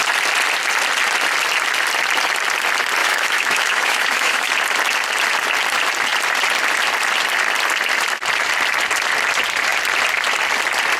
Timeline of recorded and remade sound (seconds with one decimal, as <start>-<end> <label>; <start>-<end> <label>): 0.0-3.0 recorded; 3.0-4.5 remade; 4.5-11.0 recorded